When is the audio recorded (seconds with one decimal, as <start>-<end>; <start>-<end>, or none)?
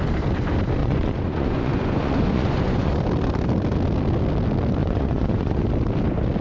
0.0-0.8; 2.9-4.8; 5.6-6.4